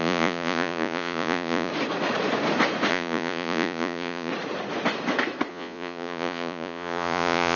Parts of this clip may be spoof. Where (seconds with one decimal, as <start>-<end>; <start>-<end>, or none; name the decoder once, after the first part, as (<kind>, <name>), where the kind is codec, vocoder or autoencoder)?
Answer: 0.0-1.7 (vocoder, Vocos); 2.9-4.3; 5.5-7.6